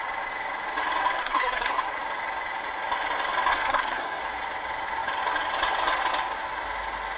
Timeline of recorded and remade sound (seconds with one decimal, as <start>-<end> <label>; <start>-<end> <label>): 0.0-1.2 recorded; 1.2-1.8 remade; 1.8-3.5 recorded; 3.5-4.2 remade; 4.2-7.2 recorded